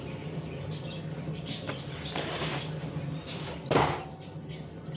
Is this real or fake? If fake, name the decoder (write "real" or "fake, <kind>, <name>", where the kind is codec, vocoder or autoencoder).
real